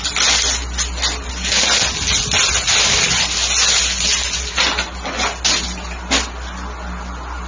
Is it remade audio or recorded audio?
recorded